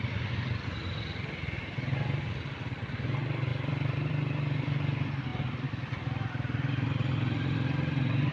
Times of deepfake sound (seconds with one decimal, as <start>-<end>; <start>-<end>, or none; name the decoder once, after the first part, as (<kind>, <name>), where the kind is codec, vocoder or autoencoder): 3.5-4.1 (vocoder, BigVGAN v2)